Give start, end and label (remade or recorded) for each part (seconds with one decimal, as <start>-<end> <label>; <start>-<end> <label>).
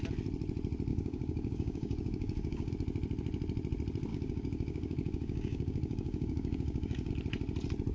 0.0-0.9 recorded; 0.9-2.7 remade; 2.7-4.1 recorded; 4.1-7.1 remade; 7.1-7.9 recorded